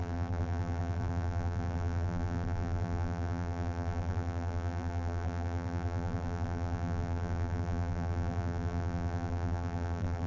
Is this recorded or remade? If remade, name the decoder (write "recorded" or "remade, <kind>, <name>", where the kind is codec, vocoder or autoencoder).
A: remade, vocoder, BigVGAN v2